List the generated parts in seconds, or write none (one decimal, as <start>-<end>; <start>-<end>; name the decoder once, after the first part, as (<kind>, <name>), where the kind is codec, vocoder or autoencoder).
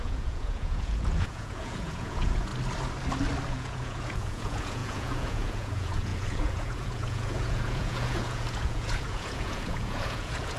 0.0-2.5 (vocoder, Vocos); 3.5-10.6